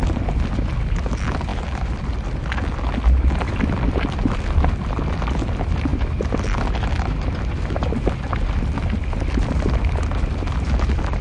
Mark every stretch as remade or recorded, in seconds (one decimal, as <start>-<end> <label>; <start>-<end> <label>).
0.0-11.2 recorded